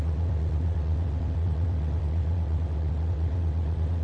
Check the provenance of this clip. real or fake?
fake